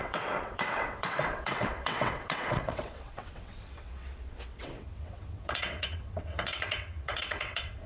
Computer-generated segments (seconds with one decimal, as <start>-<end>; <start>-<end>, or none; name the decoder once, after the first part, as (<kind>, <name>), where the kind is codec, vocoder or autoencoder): 0.0-7.9 (vocoder, WaveNeXt)